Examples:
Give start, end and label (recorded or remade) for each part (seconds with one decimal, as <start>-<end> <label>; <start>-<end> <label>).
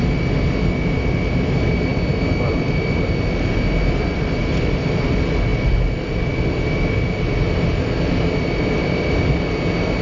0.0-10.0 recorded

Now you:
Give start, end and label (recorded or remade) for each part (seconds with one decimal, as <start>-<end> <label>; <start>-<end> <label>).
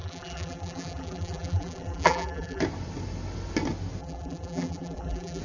0.0-2.6 remade; 2.6-4.0 recorded; 4.0-5.4 remade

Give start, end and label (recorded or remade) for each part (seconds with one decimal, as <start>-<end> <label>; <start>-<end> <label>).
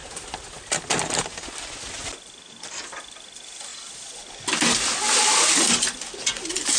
0.0-2.5 recorded; 2.5-3.7 remade; 3.7-6.3 recorded; 6.3-6.8 remade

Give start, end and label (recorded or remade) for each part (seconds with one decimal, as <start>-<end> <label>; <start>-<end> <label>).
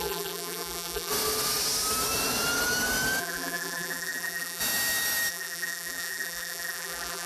0.0-1.1 remade; 1.1-3.2 recorded; 3.2-4.6 remade; 4.6-5.3 recorded; 5.3-7.3 remade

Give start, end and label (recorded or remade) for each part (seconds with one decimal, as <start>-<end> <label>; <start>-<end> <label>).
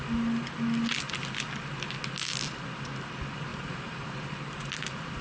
0.0-3.5 recorded; 3.5-4.7 remade; 4.7-5.2 recorded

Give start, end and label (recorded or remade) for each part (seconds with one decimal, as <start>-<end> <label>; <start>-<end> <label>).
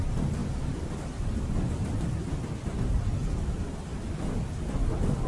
0.0-5.3 remade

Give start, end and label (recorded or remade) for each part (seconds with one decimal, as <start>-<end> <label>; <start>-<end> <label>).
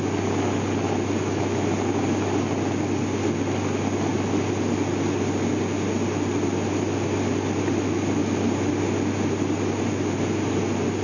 0.0-11.0 recorded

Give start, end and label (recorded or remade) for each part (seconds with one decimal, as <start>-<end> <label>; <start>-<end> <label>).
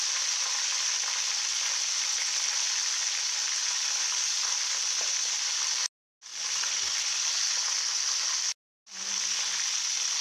0.0-10.2 recorded